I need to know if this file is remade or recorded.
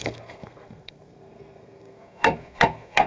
remade